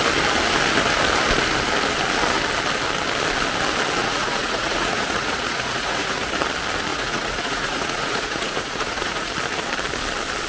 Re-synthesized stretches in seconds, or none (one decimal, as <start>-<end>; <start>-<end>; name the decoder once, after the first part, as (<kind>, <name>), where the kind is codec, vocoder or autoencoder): 4.0-6.3 (vocoder, Vocos); 6.9-9.3